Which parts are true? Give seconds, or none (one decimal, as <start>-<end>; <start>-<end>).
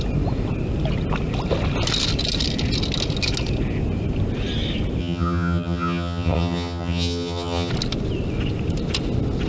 0.0-5.0; 7.7-9.5